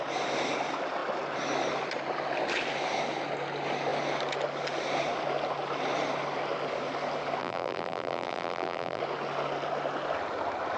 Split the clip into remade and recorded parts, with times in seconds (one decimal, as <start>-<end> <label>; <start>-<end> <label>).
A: 0.0-7.4 recorded; 7.4-9.0 remade; 9.0-10.8 recorded